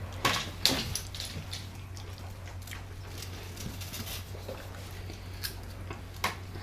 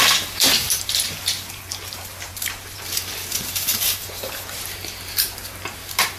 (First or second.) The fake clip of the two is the second